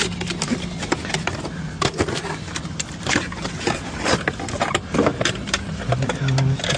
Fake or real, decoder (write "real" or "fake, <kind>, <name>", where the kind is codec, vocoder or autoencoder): real